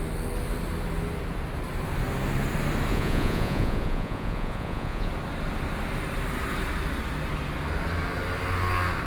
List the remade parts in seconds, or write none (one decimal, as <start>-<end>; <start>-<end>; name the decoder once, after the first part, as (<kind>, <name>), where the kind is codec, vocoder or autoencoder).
2.9-5.1 (vocoder, Vocos)